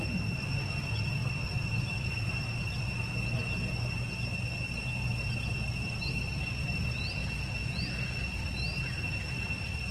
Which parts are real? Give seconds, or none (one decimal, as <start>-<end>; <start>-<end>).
0.0-7.2; 8.5-9.9